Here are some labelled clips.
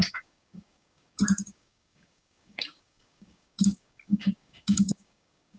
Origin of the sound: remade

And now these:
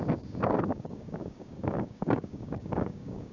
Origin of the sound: remade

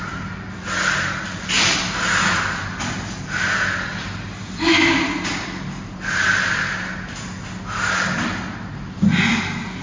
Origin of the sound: recorded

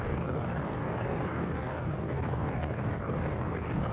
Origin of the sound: remade